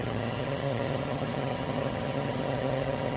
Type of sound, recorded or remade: remade